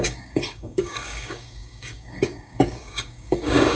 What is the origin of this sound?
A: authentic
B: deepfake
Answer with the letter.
B